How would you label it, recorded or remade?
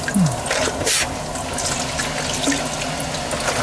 recorded